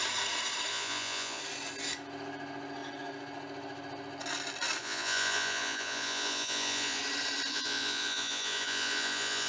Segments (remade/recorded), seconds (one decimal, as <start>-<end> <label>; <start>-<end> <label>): 0.0-0.7 recorded; 0.7-1.4 remade; 1.4-4.8 recorded; 4.8-7.0 remade; 7.0-7.5 recorded; 7.5-9.5 remade